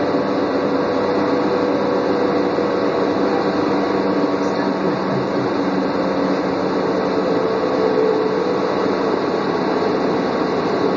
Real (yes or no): yes